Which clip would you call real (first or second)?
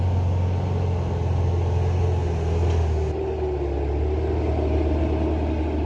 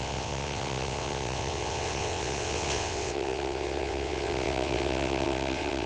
first